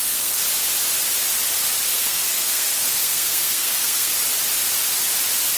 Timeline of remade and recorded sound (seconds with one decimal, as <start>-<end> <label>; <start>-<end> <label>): 0.0-0.4 remade; 0.4-1.9 recorded; 1.9-4.1 remade; 4.1-5.6 recorded